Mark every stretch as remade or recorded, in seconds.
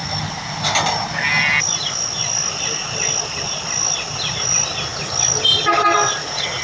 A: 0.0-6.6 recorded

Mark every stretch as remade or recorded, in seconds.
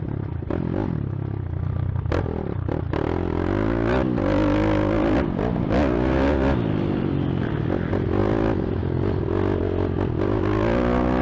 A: 0.0-11.2 recorded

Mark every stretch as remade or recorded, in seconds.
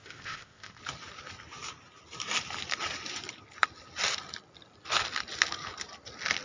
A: 0.0-0.8 remade; 0.8-6.4 recorded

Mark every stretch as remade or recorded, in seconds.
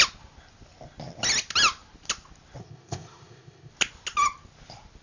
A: 0.0-2.6 recorded; 2.6-3.7 remade; 3.7-5.0 recorded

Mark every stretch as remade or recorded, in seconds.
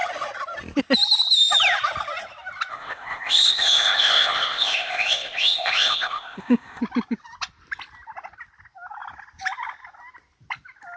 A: 0.0-2.7 recorded; 2.7-6.8 remade; 6.8-11.0 recorded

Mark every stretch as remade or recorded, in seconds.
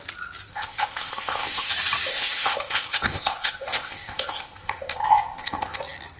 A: 0.0-0.5 recorded; 0.5-1.7 remade; 1.7-2.1 recorded; 2.1-5.8 remade; 5.8-6.2 recorded